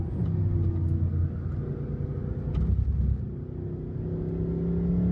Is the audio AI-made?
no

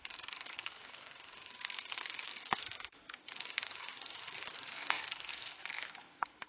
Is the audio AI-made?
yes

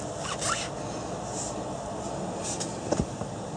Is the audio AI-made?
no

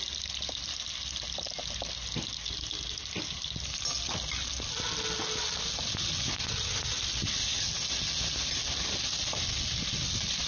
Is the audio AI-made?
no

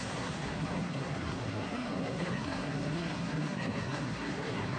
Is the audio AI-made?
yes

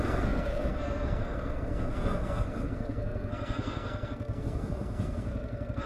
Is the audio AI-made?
yes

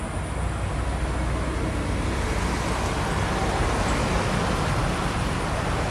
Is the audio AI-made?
no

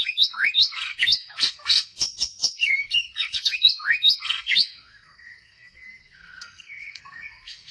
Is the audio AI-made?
yes